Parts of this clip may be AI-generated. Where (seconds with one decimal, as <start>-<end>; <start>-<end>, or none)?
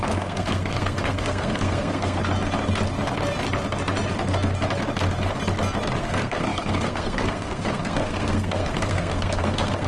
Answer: 0.0-2.2; 6.0-9.9